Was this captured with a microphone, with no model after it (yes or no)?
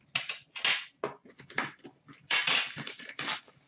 yes